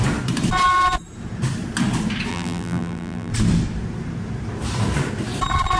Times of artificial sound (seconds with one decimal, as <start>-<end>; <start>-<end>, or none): 2.3-3.3